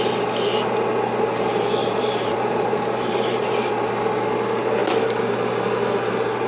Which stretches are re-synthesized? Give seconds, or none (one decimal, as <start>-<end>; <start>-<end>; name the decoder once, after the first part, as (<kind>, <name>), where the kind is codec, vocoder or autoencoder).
1.8-3.7 (vocoder, BigVGAN v2)